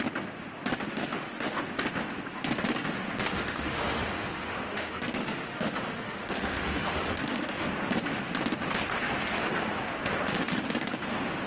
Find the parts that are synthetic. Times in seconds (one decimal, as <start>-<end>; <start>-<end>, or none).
0.9-1.6; 3.3-7.7